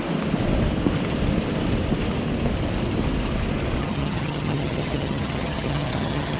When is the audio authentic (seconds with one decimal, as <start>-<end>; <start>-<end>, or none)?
0.0-3.8